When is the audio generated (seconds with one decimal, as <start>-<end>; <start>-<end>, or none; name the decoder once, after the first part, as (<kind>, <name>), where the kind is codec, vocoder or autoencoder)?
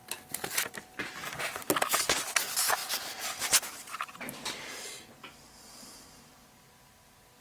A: none